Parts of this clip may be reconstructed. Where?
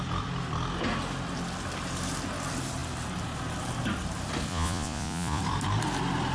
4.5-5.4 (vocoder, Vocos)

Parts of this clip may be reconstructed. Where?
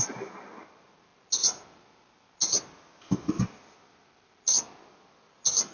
none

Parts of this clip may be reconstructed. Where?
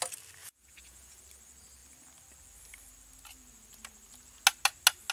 0.4-1.2 (vocoder, Vocos)